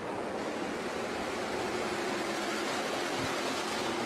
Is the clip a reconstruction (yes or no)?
no